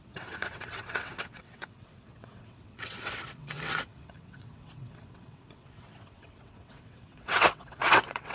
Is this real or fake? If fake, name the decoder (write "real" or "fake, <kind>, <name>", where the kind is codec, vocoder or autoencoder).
fake, vocoder, WaveNeXt